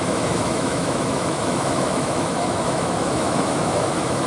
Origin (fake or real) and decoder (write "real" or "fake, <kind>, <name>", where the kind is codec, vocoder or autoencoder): fake, autoencoder, DAC-VAE